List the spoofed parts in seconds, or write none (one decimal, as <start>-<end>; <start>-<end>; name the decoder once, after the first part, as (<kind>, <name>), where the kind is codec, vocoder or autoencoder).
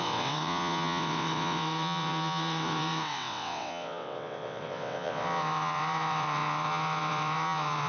0.0-7.9 (vocoder, WaveNeXt)